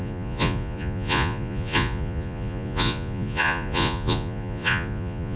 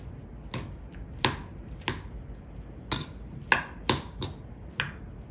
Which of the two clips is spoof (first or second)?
first